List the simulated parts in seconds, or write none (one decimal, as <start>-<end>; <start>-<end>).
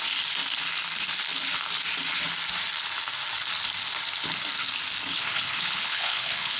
5.1-6.6